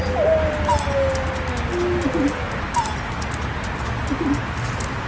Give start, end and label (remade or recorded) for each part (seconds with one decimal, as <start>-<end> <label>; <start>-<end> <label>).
0.0-5.1 recorded